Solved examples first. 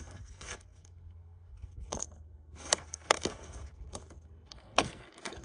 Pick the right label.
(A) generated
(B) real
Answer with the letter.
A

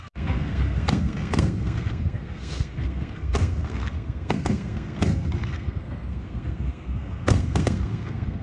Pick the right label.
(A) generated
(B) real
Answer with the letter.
A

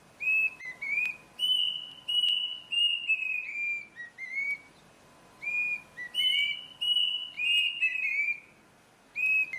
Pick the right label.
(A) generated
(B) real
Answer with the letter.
B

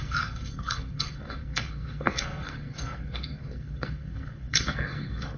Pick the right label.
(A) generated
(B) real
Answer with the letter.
A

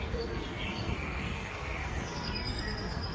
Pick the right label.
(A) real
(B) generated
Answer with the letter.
B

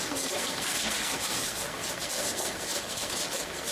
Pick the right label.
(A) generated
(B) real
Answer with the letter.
A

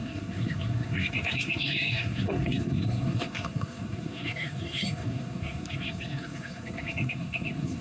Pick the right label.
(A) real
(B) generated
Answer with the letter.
B